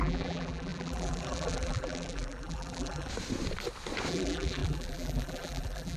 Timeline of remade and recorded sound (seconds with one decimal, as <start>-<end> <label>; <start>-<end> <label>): 0.0-3.1 remade; 3.1-4.1 recorded; 4.1-6.0 remade